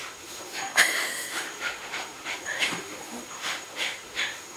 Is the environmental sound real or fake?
fake